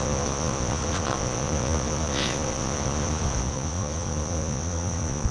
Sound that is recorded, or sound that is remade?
remade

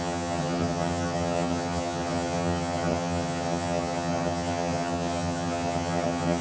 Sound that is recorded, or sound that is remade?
remade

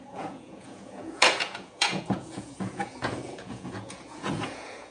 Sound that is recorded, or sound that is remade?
remade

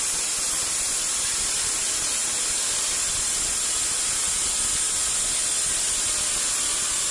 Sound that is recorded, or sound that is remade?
recorded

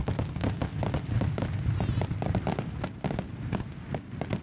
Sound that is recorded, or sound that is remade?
recorded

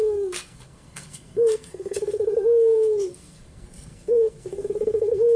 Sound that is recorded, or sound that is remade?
remade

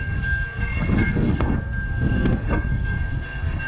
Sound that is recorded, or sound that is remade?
remade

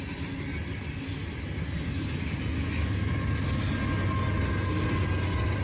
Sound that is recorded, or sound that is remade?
recorded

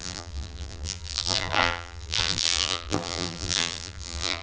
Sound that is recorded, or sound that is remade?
remade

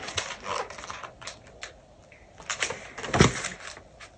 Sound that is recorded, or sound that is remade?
recorded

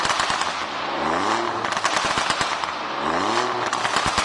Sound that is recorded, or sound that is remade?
recorded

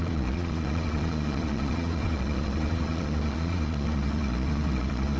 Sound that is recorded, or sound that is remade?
remade